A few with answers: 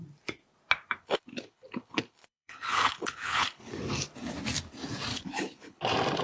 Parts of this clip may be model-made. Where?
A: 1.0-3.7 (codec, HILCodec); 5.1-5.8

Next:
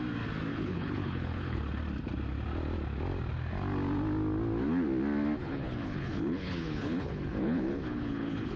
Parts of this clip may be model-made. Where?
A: 0.5-1.6 (codec, HILCodec); 5.4-8.6

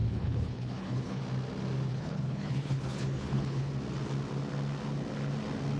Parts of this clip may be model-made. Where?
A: 0.0-1.2 (codec, HILCodec); 1.9-3.7

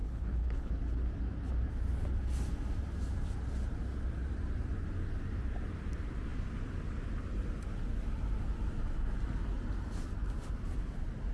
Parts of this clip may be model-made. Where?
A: 0.0-0.7 (codec, HILCodec)

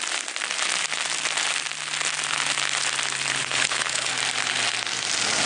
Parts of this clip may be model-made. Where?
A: 3.4-4.1 (codec, HILCodec)

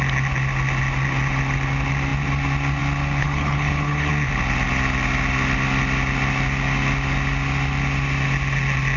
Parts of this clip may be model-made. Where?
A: 3.2-4.1 (codec, HILCodec)

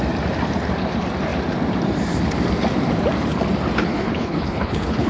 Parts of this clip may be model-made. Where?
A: 3.8-5.1 (codec, HILCodec)

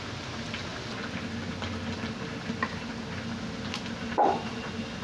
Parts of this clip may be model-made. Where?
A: none